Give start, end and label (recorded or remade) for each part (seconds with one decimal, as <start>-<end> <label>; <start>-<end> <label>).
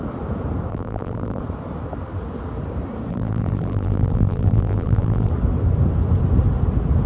0.0-0.7 recorded; 0.7-1.4 remade; 1.4-3.1 recorded; 3.1-5.3 remade; 5.3-7.1 recorded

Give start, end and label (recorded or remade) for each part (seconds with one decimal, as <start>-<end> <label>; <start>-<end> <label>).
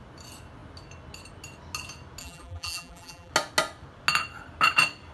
0.0-2.2 recorded; 2.2-3.3 remade; 3.3-5.1 recorded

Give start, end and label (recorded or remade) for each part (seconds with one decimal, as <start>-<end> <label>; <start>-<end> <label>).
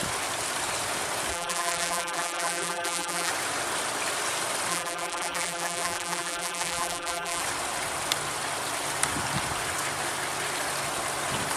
0.0-1.3 recorded; 1.3-3.3 remade; 3.3-4.7 recorded; 4.7-7.4 remade; 7.4-11.6 recorded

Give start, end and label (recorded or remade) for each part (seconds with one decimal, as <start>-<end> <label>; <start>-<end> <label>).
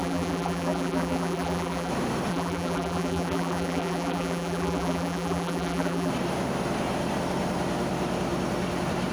0.0-1.9 remade; 1.9-2.3 recorded; 2.3-6.1 remade; 6.1-9.1 recorded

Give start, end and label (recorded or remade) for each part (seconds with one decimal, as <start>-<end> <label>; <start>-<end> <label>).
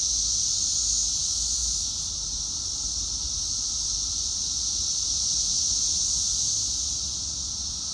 0.0-1.6 recorded; 1.6-5.4 remade; 5.4-7.9 recorded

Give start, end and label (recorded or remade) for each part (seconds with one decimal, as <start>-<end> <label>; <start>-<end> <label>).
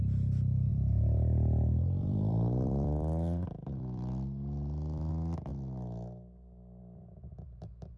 0.0-0.7 recorded; 0.7-5.1 remade; 5.1-8.0 recorded